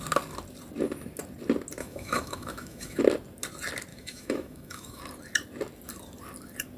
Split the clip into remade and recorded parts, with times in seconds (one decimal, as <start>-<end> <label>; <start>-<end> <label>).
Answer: 0.0-1.8 recorded; 1.8-3.0 remade; 3.0-3.9 recorded; 3.9-5.0 remade; 5.0-6.8 recorded